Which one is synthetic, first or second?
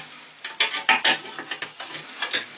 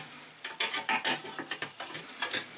second